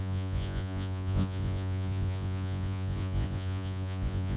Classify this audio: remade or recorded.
remade